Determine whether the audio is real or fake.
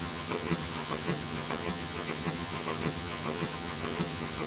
fake